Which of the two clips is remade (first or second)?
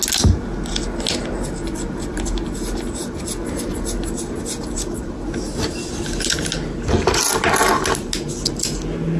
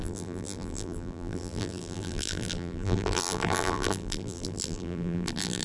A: second